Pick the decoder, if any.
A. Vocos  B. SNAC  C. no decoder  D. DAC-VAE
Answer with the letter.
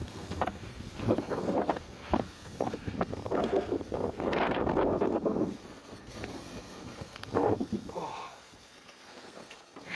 B